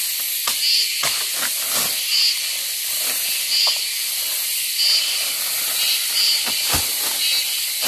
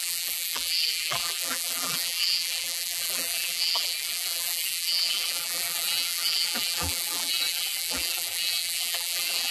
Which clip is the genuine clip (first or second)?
first